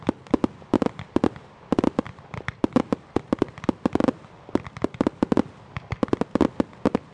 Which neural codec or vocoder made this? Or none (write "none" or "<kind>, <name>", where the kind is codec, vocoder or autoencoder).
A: none